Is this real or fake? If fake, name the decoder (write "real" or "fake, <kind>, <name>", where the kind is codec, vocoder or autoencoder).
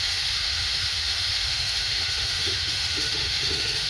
fake, autoencoder, DAC-VAE